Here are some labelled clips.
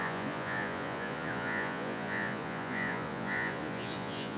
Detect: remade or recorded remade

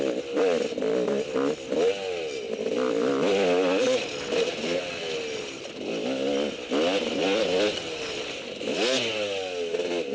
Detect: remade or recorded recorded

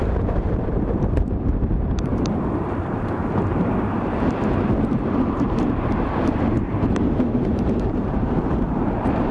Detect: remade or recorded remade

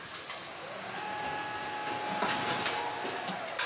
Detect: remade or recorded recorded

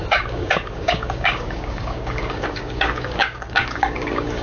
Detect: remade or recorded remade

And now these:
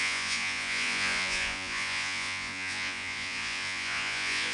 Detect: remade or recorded remade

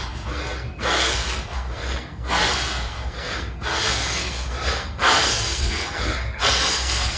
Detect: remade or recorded remade